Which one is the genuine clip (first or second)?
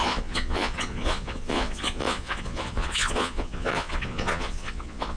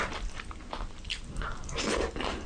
second